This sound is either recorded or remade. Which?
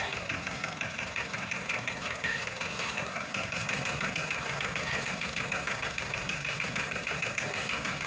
remade